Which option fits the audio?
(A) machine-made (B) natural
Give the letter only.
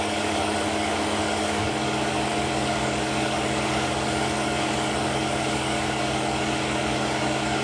A